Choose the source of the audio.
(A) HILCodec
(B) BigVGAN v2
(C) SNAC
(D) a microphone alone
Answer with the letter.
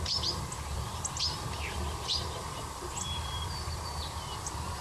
B